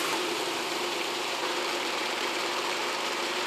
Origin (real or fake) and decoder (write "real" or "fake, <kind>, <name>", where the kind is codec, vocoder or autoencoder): fake, vocoder, BigVGAN v2